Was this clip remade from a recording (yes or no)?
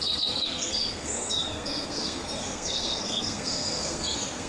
yes